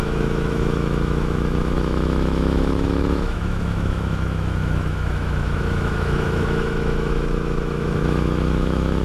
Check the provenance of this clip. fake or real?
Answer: fake